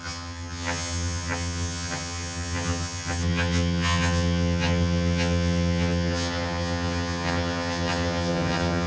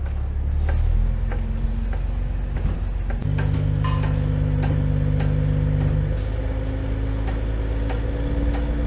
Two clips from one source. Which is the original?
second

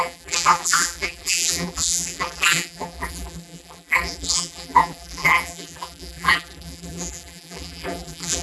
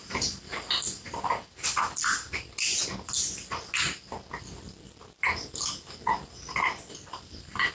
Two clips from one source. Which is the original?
second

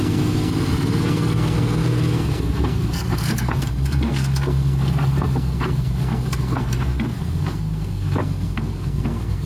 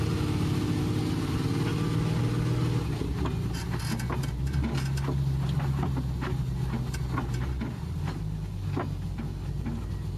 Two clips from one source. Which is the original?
second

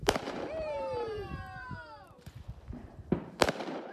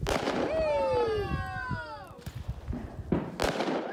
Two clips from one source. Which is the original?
second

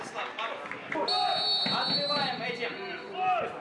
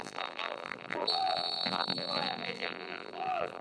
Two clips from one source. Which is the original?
first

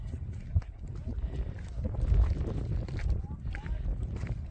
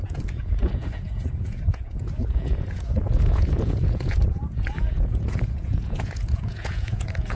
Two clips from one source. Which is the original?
first